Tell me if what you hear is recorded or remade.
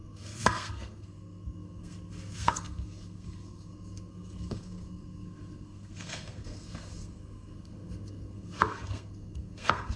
remade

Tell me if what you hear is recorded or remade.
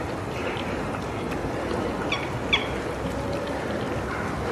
recorded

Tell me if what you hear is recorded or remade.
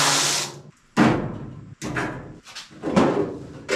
recorded